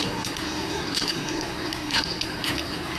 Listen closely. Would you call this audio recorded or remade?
remade